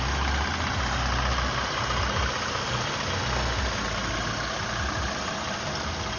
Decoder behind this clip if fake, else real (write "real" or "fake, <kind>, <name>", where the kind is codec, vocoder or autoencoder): real